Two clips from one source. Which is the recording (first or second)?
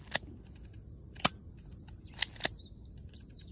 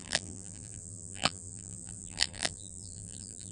first